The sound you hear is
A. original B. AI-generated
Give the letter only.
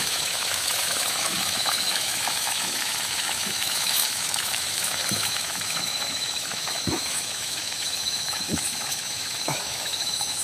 B